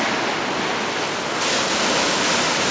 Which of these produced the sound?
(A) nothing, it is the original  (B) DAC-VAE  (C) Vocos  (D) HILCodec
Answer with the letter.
A